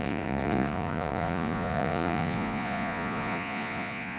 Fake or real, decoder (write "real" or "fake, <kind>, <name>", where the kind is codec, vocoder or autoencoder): fake, vocoder, Vocos